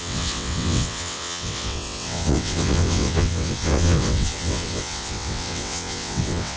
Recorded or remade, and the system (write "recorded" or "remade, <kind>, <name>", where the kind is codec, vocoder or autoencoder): remade, vocoder, WaveNeXt